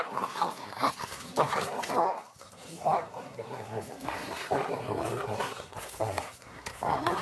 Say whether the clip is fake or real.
fake